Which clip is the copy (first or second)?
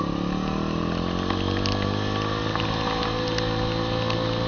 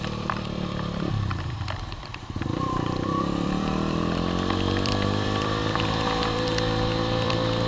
second